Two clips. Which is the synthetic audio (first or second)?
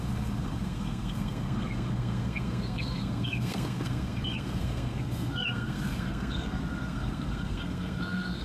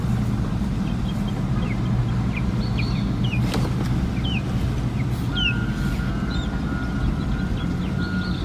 first